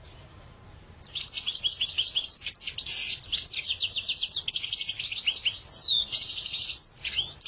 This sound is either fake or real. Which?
real